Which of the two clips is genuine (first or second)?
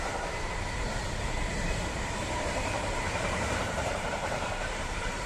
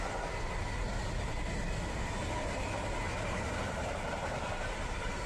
second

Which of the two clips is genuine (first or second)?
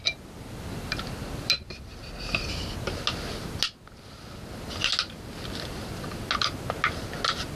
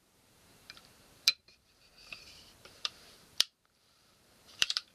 first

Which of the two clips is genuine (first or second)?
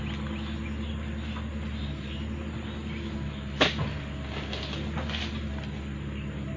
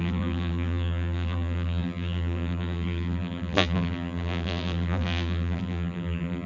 first